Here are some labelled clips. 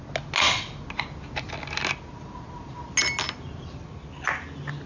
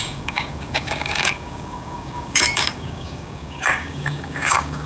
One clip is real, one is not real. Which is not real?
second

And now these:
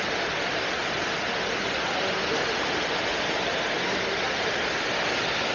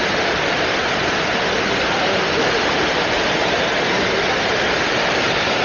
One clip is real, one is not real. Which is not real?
second